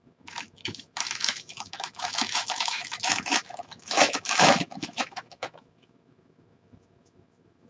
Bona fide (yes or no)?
no